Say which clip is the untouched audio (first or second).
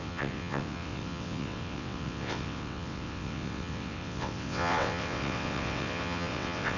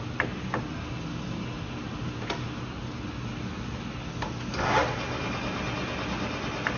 second